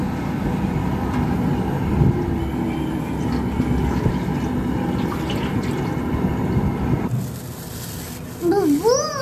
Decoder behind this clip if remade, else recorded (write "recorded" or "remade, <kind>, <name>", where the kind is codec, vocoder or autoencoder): recorded